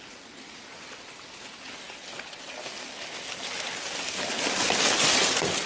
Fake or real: real